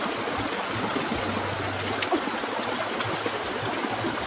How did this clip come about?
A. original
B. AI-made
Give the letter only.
A